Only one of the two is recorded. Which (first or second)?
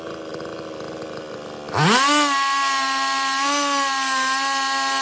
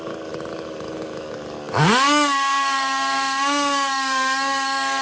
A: first